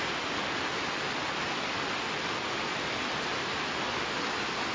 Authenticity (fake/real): real